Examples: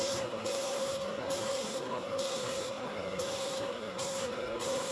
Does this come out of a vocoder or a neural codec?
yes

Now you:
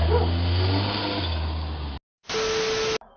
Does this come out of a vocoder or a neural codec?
no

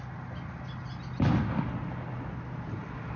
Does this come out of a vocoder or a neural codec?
no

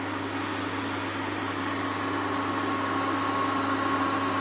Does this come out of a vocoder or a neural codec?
no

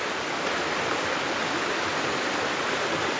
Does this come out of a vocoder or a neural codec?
no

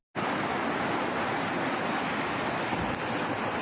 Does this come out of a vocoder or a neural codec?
no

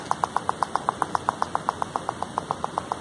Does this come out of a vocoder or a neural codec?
no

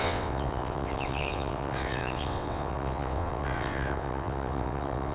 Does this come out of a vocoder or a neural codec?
yes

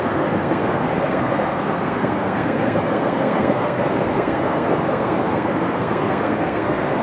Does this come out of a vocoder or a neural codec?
yes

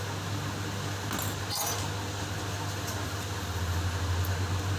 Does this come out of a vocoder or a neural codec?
no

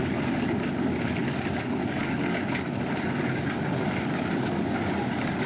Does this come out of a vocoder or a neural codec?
yes